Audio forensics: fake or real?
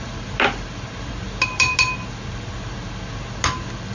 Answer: real